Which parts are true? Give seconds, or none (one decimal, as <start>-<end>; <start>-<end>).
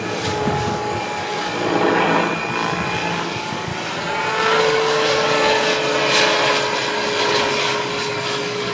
1.5-3.1; 3.7-4.6; 5.7-6.9